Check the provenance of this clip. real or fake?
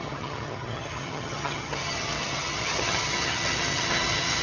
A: fake